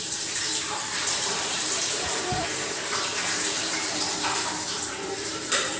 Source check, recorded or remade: remade